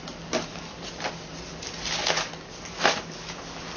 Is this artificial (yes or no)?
no